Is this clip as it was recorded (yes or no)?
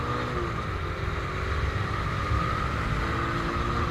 yes